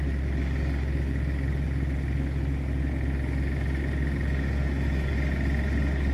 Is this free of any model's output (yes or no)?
yes